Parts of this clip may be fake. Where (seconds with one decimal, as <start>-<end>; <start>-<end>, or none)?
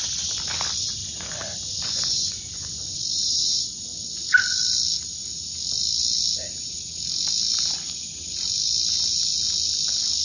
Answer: 1.0-3.7